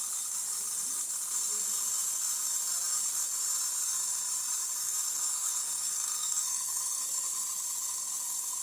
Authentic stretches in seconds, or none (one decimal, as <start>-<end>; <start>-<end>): 0.0-4.8; 7.0-8.6